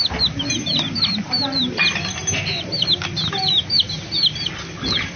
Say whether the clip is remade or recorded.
recorded